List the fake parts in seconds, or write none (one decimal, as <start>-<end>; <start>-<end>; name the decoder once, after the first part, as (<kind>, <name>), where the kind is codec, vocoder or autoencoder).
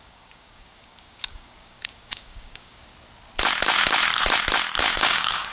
0.0-2.9 (codec, DAC); 4.8-5.5